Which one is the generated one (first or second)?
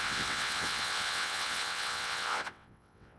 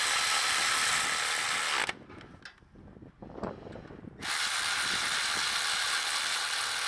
first